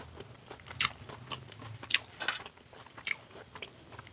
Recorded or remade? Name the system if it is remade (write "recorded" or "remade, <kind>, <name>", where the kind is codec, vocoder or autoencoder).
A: recorded